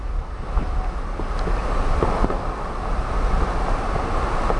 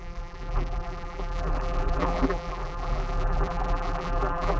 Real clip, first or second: first